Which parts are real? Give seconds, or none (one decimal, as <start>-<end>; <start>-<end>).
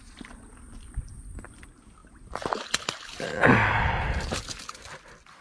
0.0-5.4